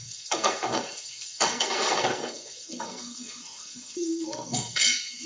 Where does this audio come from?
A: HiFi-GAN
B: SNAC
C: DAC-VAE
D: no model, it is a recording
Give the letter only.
B